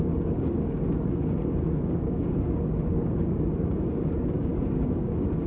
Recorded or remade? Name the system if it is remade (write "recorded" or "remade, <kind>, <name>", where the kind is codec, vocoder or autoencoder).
remade, codec, DAC